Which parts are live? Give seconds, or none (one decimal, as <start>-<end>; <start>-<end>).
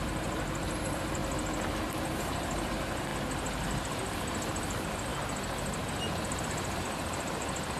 1.2-1.9; 3.1-3.6; 5.1-6.4